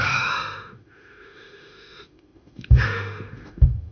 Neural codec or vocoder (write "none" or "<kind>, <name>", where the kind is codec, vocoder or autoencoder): autoencoder, DAC-VAE